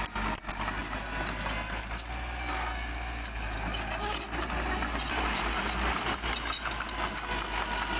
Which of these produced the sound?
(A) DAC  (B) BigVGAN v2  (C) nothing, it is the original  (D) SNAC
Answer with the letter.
C